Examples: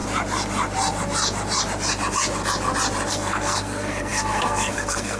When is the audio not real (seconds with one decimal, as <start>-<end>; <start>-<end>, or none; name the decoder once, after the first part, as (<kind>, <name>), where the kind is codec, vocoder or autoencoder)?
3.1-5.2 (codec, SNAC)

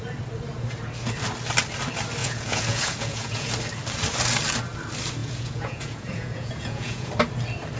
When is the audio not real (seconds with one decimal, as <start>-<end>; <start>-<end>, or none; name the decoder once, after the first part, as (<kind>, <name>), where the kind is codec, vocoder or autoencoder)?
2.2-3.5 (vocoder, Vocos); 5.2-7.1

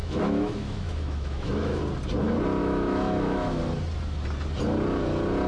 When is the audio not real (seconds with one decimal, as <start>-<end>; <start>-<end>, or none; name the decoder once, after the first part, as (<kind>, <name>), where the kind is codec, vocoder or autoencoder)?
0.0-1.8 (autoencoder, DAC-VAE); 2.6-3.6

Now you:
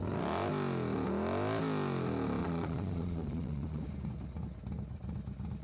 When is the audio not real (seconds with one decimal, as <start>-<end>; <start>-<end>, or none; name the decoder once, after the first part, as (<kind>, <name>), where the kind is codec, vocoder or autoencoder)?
2.4-3.8 (vocoder, Vocos)

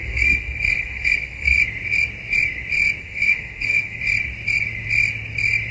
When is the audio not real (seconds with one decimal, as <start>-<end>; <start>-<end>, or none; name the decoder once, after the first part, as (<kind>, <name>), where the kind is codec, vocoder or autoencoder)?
0.0-1.6 (codec, SNAC); 3.0-4.0

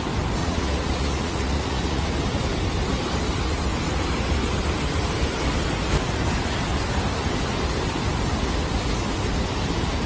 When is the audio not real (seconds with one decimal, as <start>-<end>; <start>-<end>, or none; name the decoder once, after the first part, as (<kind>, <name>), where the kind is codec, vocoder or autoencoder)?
0.4-2.1 (vocoder, Vocos)